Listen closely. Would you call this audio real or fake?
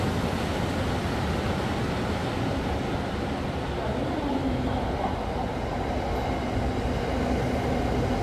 real